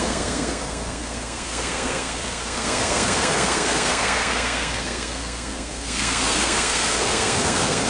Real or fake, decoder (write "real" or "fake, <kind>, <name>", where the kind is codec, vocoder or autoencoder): fake, codec, SNAC